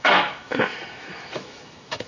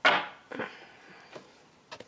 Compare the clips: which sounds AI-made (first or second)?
first